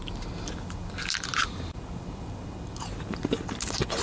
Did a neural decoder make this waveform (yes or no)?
no